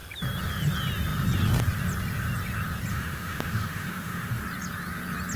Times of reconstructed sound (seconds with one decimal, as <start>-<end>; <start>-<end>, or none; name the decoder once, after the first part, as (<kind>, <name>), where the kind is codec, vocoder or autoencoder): 2.9-4.4 (autoencoder, DAC-VAE)